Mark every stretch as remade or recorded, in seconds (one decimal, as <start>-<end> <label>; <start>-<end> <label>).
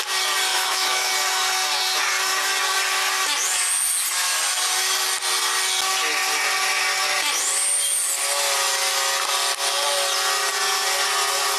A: 0.0-0.5 recorded; 0.5-1.1 remade; 1.1-11.6 recorded